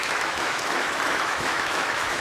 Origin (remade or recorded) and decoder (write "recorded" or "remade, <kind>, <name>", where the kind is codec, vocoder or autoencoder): remade, autoencoder, DAC-VAE